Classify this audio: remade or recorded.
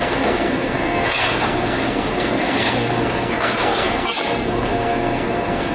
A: remade